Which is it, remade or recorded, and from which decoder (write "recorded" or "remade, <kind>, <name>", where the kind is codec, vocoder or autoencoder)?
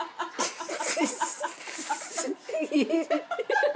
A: recorded